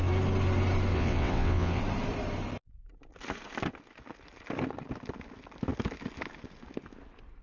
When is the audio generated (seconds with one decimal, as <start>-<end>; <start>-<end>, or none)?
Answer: 0.9-1.8